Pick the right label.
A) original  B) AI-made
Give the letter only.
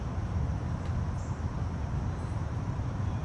B